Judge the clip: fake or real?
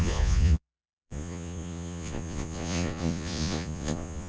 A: fake